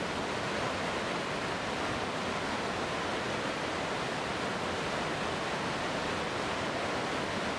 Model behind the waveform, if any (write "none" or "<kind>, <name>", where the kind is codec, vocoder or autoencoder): none